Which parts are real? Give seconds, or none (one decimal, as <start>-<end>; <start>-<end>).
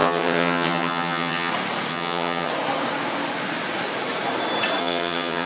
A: 1.5-1.9; 2.5-4.8